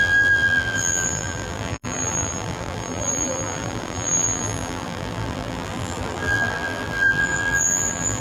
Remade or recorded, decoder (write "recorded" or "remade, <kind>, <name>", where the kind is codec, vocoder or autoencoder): remade, vocoder, BigVGAN v2